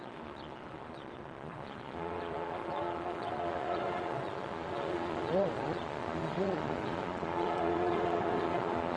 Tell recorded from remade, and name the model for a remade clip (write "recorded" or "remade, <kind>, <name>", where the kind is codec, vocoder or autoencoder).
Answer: remade, vocoder, Vocos